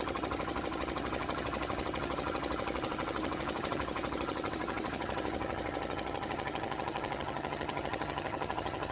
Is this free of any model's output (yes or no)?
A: no